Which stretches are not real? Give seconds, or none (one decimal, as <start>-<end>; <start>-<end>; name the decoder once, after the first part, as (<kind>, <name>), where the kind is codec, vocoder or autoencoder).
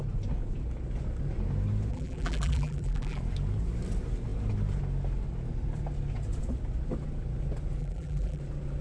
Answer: 1.9-3.2 (vocoder, BigVGAN v2); 7.8-8.4